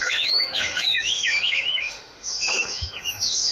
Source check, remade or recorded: remade